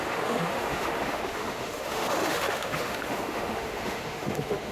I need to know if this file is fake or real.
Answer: fake